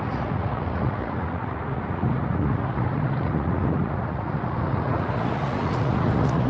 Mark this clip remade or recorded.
remade